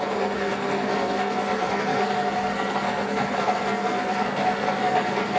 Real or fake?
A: fake